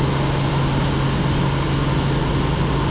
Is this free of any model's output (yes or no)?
yes